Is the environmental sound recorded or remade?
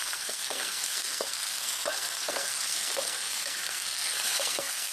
remade